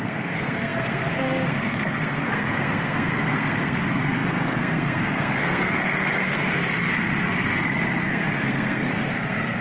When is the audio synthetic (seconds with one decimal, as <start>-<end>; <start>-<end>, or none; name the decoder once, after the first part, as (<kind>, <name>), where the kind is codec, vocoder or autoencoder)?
0.0-9.6 (codec, SNAC)